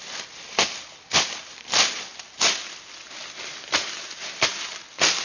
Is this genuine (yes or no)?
yes